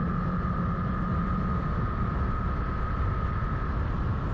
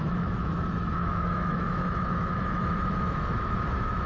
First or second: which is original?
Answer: first